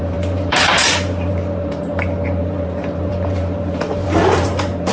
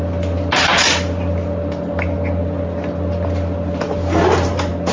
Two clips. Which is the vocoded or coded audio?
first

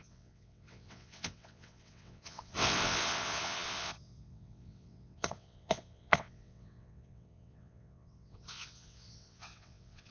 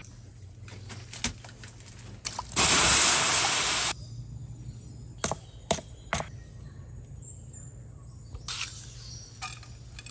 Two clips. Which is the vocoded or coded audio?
first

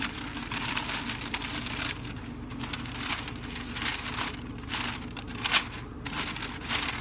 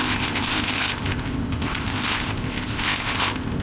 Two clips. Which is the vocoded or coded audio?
second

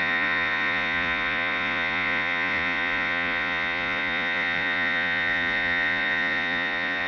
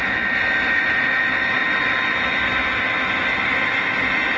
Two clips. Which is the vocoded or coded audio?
first